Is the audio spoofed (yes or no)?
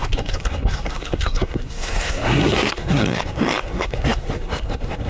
yes